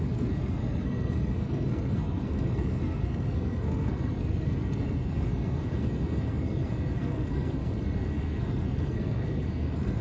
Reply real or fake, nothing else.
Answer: fake